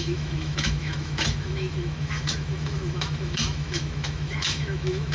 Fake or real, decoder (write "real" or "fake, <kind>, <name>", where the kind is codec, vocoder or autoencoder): fake, autoencoder, DAC-VAE